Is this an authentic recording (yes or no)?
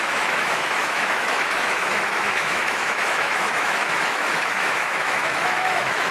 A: no